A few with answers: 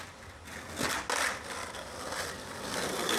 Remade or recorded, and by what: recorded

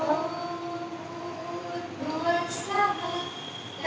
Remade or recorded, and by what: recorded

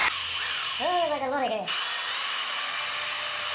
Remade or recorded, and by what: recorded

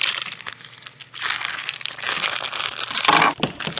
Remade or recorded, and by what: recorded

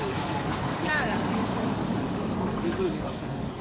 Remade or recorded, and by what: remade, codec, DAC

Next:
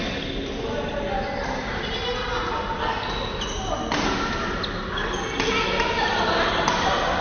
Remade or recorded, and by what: recorded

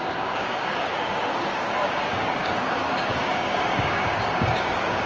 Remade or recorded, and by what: remade, codec, DAC